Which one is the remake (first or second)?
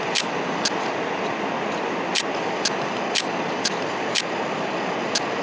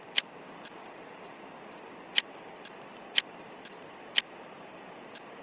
second